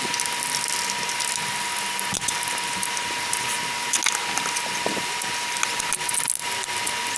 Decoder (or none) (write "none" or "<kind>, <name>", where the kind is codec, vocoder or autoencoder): none